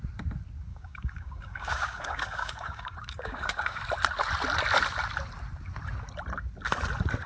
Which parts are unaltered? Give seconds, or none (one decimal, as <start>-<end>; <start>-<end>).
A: 0.0-0.7; 3.8-7.3